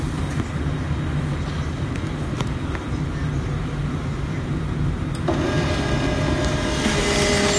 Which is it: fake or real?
real